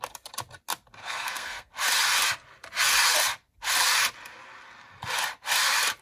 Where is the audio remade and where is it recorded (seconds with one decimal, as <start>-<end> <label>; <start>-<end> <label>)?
0.0-1.0 recorded; 1.0-1.7 remade; 1.7-6.0 recorded